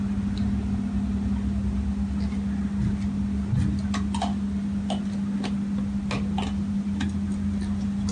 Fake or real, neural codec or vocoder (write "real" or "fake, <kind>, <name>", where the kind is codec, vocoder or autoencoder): real